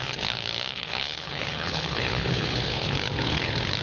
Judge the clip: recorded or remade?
remade